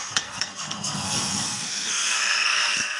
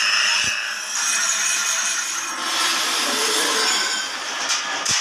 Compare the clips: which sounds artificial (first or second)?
first